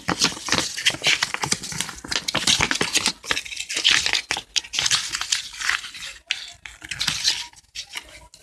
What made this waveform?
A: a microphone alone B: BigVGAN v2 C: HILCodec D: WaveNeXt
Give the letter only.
A